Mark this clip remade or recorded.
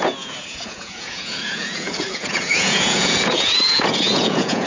remade